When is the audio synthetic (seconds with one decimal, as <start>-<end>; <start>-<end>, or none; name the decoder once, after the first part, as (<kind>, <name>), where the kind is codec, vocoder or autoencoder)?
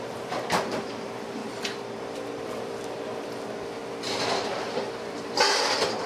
0.0-3.8 (vocoder, BigVGAN v2); 4.4-6.1